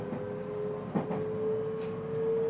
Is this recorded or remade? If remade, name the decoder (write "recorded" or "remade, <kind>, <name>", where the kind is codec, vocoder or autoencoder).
recorded